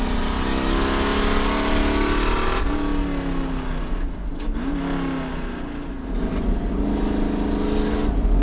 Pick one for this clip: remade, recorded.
recorded